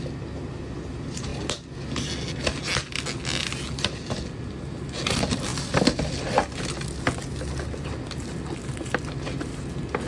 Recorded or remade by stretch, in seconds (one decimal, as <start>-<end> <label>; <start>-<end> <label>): 0.0-10.1 recorded